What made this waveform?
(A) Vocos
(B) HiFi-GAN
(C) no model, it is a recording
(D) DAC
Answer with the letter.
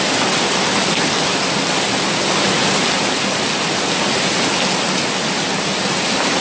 C